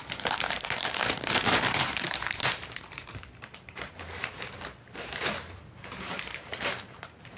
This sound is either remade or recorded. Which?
remade